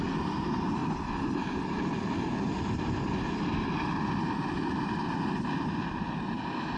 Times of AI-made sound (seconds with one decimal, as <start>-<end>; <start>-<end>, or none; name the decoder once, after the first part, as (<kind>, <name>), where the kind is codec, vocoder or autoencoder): none